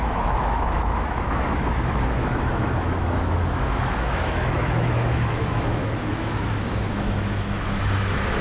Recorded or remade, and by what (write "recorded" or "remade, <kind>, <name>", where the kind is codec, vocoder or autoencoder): remade, autoencoder, DAC-VAE